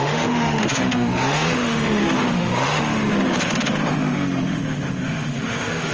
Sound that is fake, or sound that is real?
fake